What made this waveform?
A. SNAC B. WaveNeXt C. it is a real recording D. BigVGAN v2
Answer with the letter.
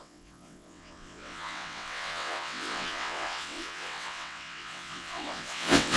B